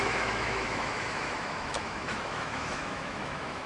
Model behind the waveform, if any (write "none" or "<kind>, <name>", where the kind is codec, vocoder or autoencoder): autoencoder, DAC-VAE